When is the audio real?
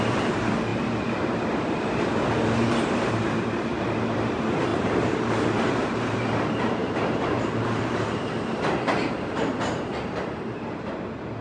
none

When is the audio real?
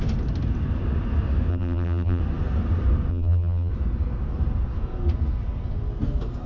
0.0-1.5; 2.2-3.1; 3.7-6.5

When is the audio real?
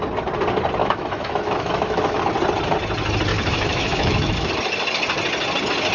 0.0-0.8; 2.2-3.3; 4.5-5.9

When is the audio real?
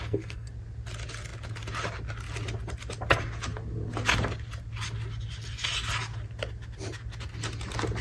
0.5-8.0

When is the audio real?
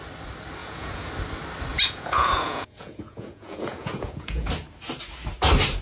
0.0-0.6; 1.1-1.7; 4.5-5.8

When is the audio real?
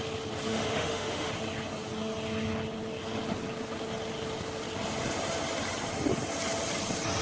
0.0-0.5; 1.3-7.2